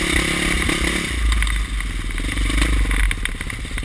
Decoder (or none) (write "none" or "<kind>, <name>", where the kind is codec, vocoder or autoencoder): none